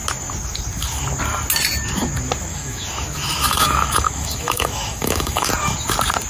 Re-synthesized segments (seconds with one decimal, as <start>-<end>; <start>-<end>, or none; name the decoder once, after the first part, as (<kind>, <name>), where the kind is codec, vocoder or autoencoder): 2.5-5.5 (autoencoder, DAC-VAE)